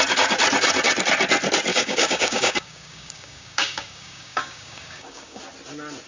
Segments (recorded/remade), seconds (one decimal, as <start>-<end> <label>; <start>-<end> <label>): 0.0-1.7 recorded; 1.7-5.4 remade; 5.4-6.1 recorded